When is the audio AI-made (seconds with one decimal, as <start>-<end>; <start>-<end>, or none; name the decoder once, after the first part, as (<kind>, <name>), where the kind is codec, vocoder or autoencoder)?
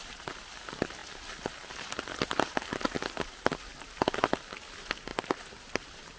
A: none